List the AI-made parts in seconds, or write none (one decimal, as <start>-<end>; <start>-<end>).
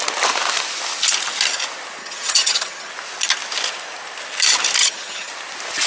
2.0-2.9; 4.8-5.3